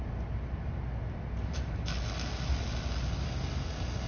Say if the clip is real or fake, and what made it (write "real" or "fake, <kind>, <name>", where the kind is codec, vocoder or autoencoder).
real